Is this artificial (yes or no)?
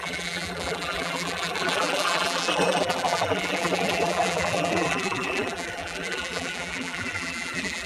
yes